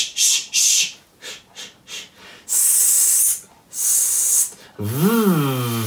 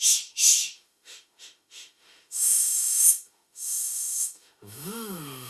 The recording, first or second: first